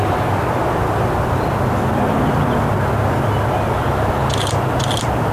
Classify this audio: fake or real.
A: real